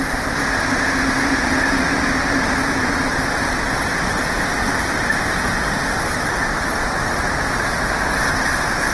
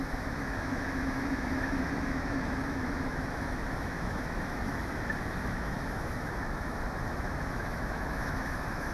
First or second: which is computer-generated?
second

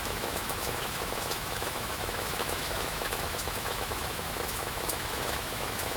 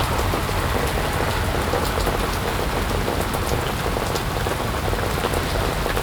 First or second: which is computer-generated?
first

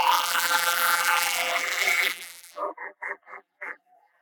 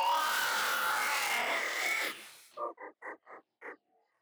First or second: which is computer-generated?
first